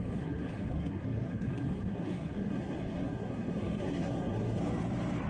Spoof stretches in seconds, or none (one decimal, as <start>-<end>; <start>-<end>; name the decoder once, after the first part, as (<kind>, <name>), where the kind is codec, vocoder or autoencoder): 0.0-4.6 (codec, SNAC)